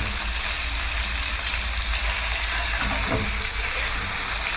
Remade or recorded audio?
recorded